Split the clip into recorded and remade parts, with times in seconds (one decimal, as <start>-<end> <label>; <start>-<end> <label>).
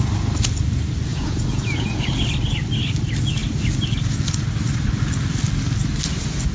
0.0-1.1 recorded; 1.1-2.1 remade; 2.1-6.5 recorded